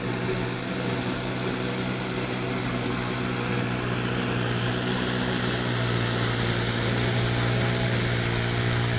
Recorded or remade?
recorded